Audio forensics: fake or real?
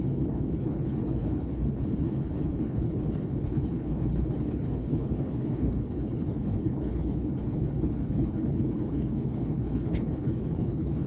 fake